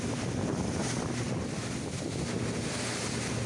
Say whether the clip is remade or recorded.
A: recorded